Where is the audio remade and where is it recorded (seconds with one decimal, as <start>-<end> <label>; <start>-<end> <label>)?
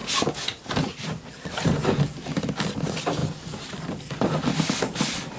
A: 0.0-5.4 recorded